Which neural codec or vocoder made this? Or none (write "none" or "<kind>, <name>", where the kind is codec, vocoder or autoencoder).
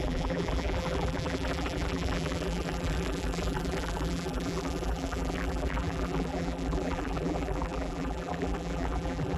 vocoder, BigVGAN v2